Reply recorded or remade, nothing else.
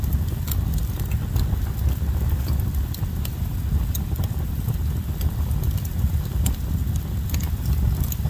recorded